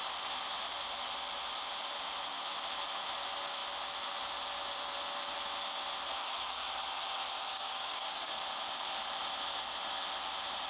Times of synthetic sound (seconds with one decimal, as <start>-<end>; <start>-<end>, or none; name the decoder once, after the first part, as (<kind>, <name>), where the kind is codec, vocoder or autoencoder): 7.5-8.3 (codec, DAC)